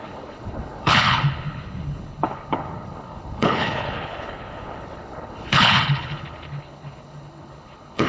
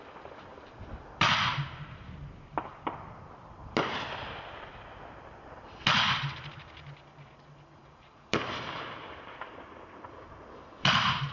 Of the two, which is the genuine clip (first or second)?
second